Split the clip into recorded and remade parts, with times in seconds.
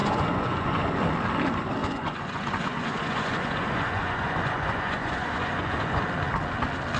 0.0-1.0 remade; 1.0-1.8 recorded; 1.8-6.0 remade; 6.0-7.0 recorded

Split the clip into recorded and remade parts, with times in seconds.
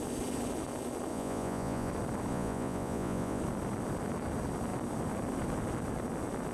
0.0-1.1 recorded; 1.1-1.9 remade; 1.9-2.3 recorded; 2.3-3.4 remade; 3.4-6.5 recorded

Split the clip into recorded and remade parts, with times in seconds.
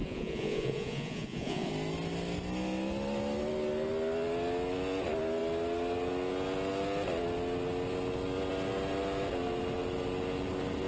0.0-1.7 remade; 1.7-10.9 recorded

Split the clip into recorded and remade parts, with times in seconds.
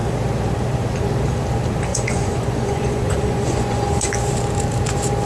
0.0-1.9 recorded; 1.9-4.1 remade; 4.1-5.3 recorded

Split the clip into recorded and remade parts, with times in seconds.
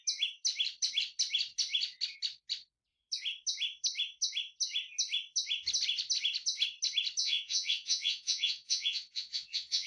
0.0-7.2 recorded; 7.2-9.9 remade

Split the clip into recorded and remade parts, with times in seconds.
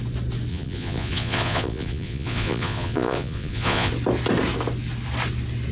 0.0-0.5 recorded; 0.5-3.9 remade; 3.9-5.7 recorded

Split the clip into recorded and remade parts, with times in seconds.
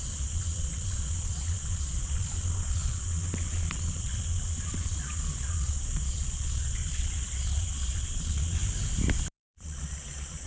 0.0-8.6 remade; 8.6-9.3 recorded; 9.3-10.5 remade